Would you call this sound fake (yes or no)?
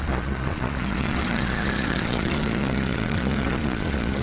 yes